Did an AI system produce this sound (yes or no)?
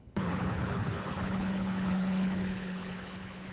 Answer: yes